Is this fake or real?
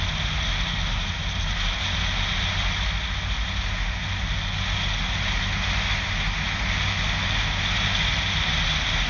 real